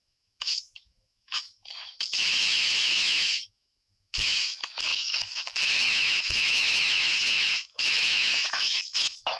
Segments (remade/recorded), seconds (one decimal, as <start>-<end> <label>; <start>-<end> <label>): 0.0-9.4 remade